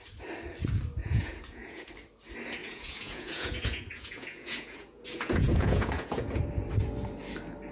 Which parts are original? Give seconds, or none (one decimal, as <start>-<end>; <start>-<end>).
0.0-1.0; 1.9-2.6; 6.4-7.7